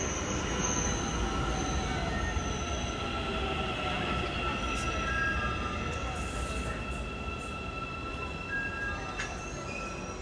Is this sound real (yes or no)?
yes